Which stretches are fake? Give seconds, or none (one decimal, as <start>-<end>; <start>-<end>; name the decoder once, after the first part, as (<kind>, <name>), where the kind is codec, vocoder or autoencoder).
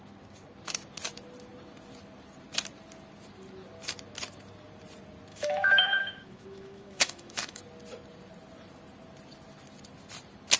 5.3-7.6 (autoencoder, DAC-VAE)